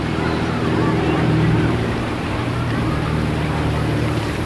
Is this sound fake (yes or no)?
yes